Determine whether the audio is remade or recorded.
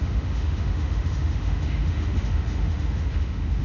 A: remade